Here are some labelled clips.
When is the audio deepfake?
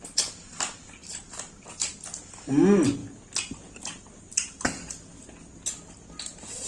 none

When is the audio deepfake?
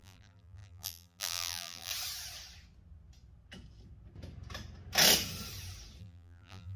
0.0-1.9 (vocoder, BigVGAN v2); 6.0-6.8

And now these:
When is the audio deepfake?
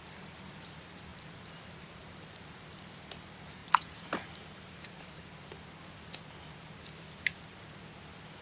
1.1-2.6 (vocoder, BigVGAN v2); 3.6-5.2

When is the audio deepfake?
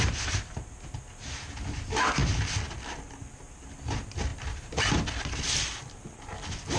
none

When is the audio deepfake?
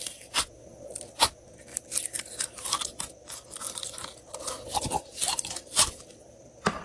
none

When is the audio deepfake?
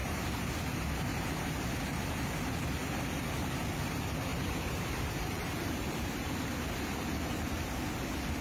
0.0-0.6 (vocoder, BigVGAN v2); 1.1-1.7; 4.3-6.3